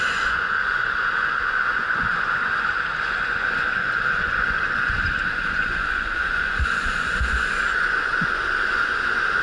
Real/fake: fake